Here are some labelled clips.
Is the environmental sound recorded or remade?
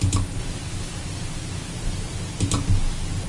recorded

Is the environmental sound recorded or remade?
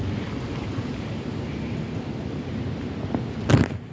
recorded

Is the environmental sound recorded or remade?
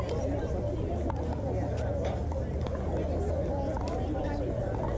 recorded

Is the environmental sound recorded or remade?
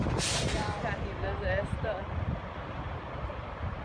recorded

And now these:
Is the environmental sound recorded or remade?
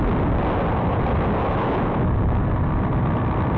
recorded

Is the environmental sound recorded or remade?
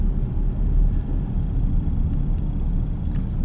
recorded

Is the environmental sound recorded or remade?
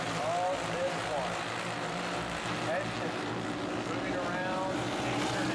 recorded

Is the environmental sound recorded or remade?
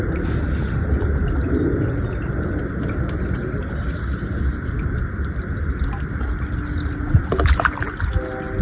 recorded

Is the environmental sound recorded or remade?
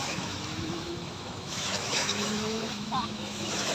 remade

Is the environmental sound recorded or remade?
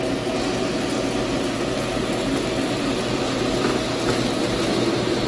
recorded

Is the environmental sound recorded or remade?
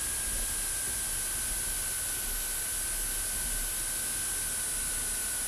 recorded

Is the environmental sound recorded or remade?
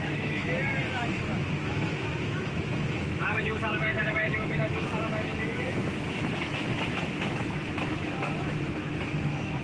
remade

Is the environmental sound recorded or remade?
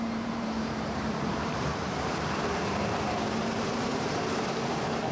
remade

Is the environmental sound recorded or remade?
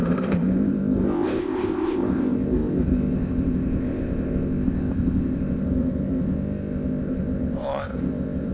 remade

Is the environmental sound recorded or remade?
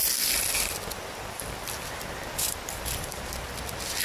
remade